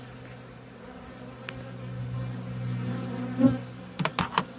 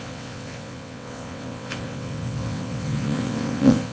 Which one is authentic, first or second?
first